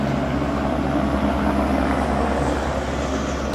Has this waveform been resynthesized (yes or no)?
no